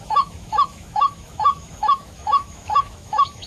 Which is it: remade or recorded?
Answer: remade